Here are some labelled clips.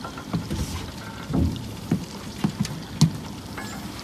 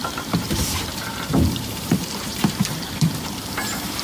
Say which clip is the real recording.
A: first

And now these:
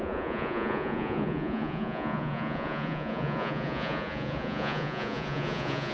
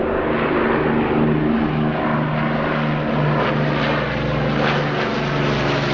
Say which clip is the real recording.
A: second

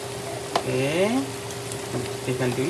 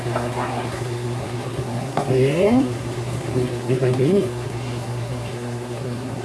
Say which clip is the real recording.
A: first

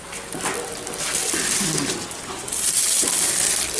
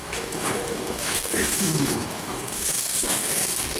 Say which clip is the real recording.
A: first